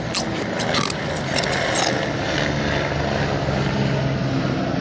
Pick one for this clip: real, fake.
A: real